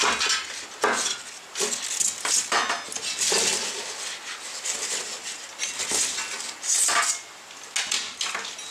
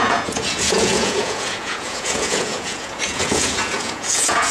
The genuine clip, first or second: first